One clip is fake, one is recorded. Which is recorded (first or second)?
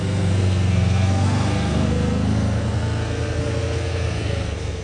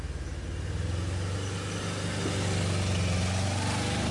second